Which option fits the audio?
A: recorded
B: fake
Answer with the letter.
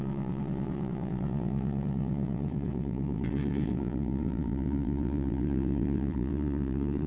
B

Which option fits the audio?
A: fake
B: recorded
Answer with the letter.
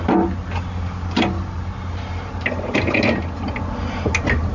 B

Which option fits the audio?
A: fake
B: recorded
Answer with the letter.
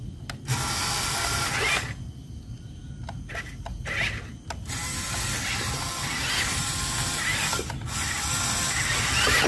B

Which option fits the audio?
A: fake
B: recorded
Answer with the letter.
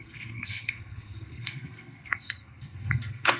A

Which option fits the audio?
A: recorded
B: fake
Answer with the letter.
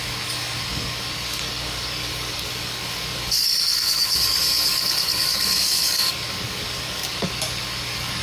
B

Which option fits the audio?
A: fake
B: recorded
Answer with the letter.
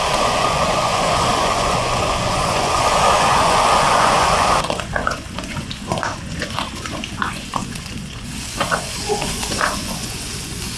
A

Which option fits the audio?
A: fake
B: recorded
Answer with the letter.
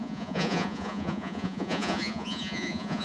A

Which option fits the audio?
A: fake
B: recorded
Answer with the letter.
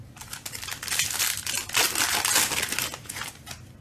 B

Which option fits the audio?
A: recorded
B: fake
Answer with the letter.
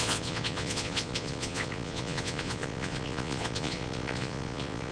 B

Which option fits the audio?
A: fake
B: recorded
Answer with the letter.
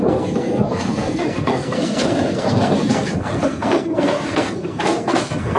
A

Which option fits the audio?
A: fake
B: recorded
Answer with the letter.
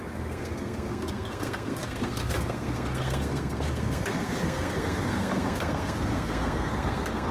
A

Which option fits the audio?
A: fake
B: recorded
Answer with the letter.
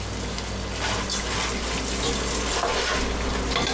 B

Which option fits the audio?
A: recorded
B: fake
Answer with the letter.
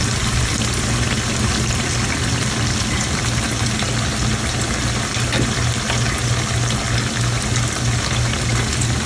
A